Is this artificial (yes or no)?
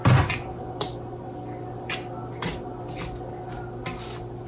no